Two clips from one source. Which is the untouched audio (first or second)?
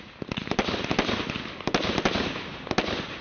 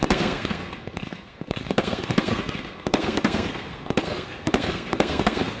first